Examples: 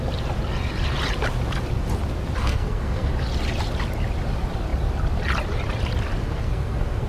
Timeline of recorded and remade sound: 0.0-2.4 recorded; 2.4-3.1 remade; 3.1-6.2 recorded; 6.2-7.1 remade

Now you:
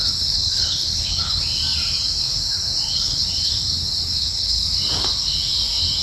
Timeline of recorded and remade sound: 0.0-1.4 remade; 1.4-2.9 recorded; 2.9-3.6 remade; 3.6-4.2 recorded; 4.2-4.8 remade; 4.8-6.0 recorded

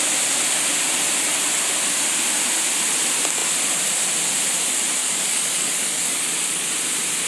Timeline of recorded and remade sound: 0.0-5.0 recorded; 5.0-6.7 remade; 6.7-7.3 recorded

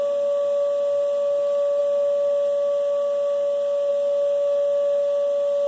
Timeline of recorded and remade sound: 0.0-5.7 recorded

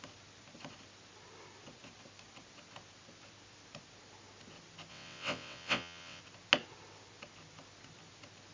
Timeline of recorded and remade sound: 0.0-4.9 recorded; 4.9-6.2 remade; 6.2-8.5 recorded